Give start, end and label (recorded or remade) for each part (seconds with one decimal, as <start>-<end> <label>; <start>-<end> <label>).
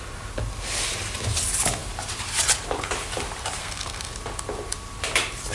0.0-3.6 recorded; 3.6-4.1 remade; 4.1-5.5 recorded